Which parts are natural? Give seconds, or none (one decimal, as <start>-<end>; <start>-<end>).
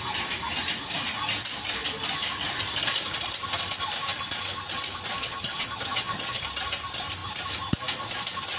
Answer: 0.0-5.2; 6.4-8.6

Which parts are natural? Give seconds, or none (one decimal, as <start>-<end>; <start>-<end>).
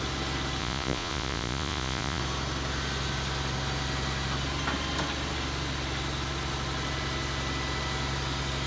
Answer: 0.0-0.6; 2.2-8.7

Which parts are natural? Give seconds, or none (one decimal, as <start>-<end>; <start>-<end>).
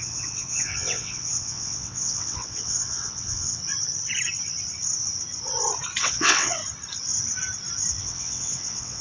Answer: 3.6-6.0; 6.6-8.0